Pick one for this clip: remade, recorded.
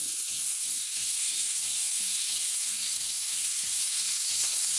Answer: remade